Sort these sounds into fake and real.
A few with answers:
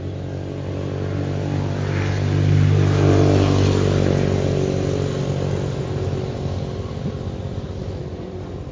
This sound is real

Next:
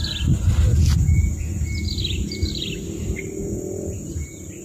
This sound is real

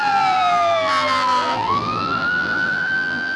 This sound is fake